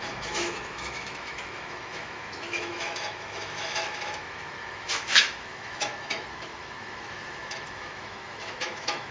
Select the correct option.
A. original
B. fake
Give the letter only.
B